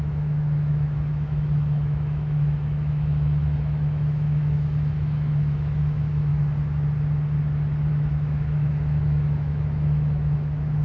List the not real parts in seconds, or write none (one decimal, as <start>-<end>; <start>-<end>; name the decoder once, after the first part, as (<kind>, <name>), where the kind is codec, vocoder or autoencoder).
0.0-6.3 (autoencoder, DAC-VAE); 7.9-10.8